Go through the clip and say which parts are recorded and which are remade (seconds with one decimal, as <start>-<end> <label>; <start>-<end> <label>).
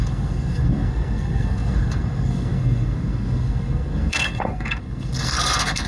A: 0.0-5.9 remade